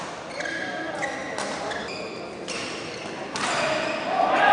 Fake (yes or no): no